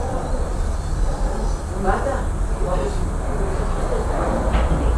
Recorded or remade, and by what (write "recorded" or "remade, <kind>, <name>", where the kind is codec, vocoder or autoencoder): recorded